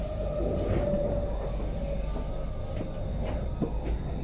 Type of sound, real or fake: real